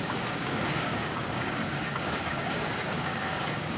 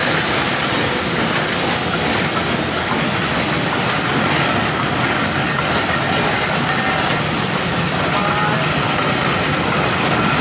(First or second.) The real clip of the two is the second